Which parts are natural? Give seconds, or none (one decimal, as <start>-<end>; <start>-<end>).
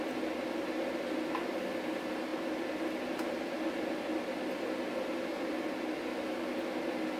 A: 0.0-7.2